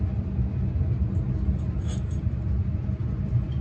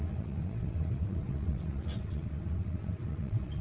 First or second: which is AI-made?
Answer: second